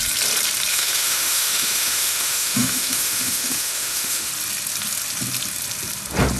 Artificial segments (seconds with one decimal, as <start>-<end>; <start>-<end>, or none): 0.7-4.3